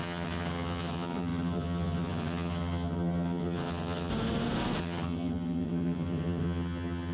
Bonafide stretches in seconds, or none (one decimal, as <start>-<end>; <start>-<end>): 4.1-4.8